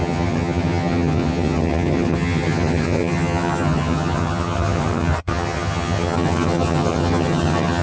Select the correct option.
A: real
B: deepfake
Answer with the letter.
B